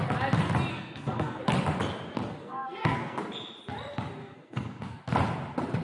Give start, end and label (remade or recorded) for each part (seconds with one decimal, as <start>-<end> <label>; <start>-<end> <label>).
0.0-0.7 recorded; 0.7-1.4 remade; 1.4-2.4 recorded; 2.4-3.2 remade; 3.2-4.2 recorded; 4.2-5.0 remade; 5.0-5.8 recorded